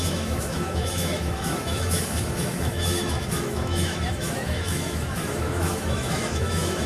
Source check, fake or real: fake